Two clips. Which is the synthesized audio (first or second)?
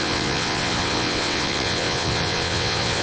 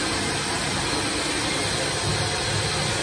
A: first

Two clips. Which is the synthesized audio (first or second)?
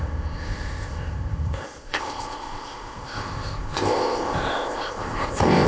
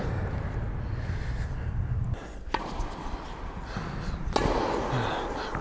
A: first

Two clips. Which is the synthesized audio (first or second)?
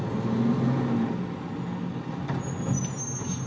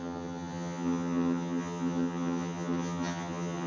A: second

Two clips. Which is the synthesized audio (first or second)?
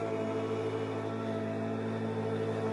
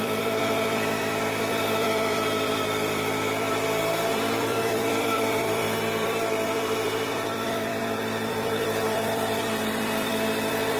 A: second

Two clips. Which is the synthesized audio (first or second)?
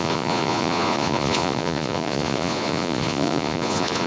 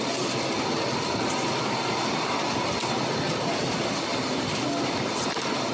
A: first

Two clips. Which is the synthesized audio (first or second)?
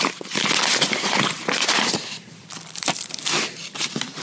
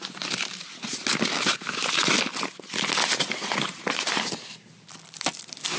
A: first